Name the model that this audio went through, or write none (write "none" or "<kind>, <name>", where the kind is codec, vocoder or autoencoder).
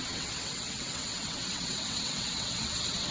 vocoder, WaveNeXt